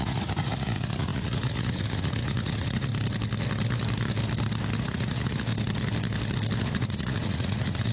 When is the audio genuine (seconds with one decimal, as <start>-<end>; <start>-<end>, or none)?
2.9-4.8; 5.5-6.6